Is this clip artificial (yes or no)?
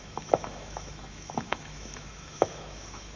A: yes